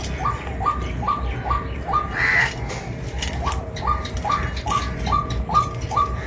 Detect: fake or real real